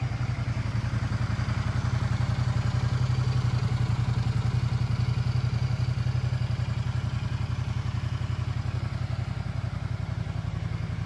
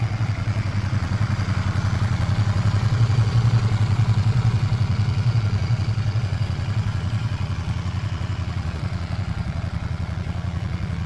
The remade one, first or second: second